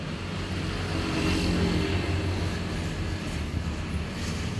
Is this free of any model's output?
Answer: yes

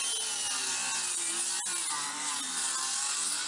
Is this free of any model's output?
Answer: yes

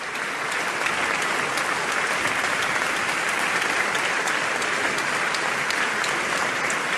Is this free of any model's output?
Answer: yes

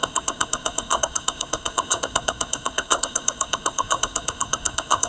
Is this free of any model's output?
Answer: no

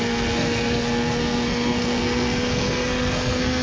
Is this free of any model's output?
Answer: no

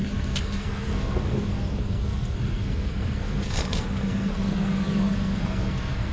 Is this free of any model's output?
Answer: no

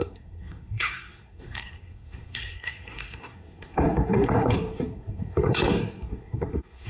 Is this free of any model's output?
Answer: no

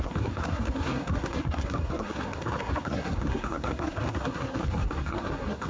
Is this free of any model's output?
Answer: no